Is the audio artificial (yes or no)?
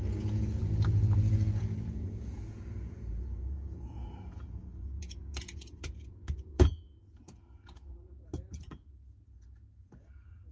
yes